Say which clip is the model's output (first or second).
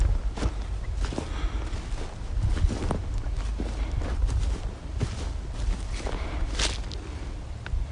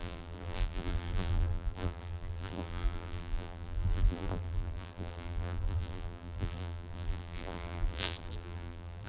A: second